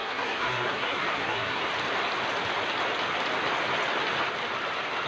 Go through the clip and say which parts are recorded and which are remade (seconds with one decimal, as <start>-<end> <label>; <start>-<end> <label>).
0.0-1.6 remade; 1.6-5.1 recorded